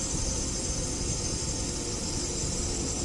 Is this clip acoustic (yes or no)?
yes